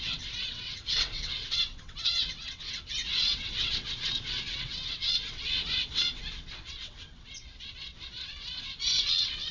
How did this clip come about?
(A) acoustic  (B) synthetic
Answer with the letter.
B